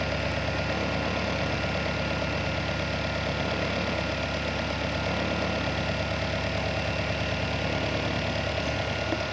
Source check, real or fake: real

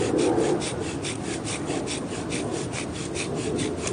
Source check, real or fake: real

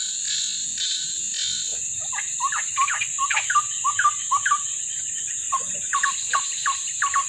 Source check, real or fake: real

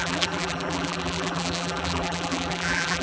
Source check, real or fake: fake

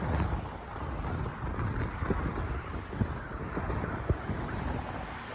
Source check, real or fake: real